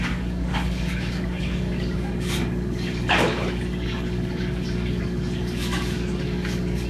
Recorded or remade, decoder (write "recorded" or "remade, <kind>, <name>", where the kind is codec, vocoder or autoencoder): remade, codec, DAC